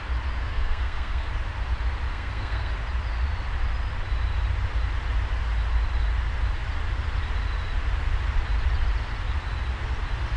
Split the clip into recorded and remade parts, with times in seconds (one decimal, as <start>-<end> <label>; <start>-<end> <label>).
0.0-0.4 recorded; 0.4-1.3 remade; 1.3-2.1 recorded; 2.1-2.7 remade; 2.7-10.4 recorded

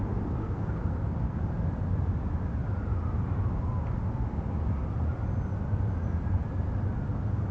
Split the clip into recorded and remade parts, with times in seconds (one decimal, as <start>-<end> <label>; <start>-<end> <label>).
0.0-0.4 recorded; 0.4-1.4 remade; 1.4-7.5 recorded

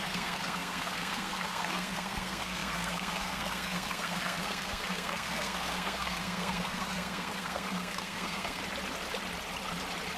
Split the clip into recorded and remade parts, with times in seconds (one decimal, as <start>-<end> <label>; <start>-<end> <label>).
0.0-8.6 remade; 8.6-10.2 recorded